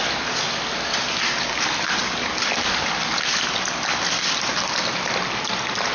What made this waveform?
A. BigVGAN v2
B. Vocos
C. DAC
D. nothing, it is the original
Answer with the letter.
D